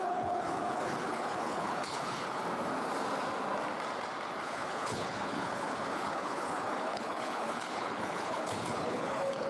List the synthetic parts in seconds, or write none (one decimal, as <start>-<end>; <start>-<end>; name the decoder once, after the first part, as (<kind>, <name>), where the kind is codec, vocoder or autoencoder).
0.0-2.4 (codec, HILCodec); 4.4-9.5